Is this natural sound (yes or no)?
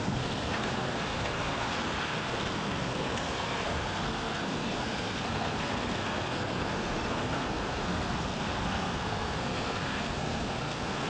no